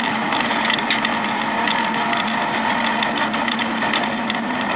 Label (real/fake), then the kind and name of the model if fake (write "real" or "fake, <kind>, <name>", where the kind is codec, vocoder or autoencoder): real